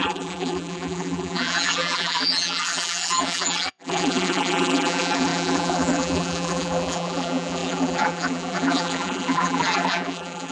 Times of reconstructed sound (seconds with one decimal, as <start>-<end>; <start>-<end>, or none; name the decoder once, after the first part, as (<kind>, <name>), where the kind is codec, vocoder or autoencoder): 0.0-10.5 (vocoder, BigVGAN v2)